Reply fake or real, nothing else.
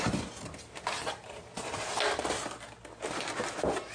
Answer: real